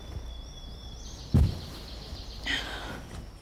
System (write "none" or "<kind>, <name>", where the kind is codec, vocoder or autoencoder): none